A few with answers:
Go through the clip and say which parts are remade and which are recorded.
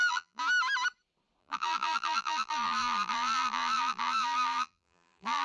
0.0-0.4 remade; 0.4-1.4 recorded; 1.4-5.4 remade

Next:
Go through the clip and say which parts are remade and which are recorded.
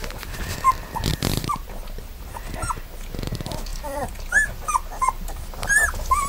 0.0-1.1 recorded; 1.1-2.5 remade; 2.5-3.7 recorded; 3.7-4.5 remade; 4.5-6.3 recorded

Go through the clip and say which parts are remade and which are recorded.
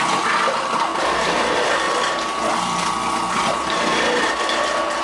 0.0-0.9 recorded; 0.9-3.9 remade; 3.9-5.0 recorded